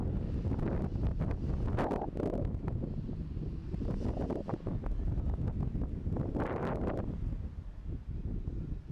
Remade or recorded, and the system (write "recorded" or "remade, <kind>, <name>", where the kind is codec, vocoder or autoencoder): recorded